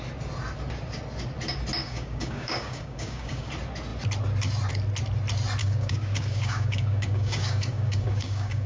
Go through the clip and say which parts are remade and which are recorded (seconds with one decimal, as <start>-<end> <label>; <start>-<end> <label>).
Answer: 0.0-1.8 recorded; 1.8-3.5 remade; 3.5-5.6 recorded; 5.6-8.7 remade